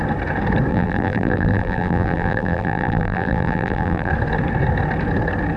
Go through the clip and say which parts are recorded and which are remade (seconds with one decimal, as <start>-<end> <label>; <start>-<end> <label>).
0.0-0.7 recorded; 0.7-4.1 remade; 4.1-5.6 recorded